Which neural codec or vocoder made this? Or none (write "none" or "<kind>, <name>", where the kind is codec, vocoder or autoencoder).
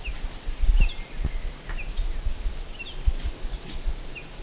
none